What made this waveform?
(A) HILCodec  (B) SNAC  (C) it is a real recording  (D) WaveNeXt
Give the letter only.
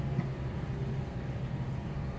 C